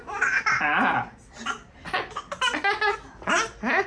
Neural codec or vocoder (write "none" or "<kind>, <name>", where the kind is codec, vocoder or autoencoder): none